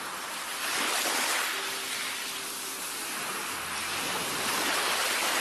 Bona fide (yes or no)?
yes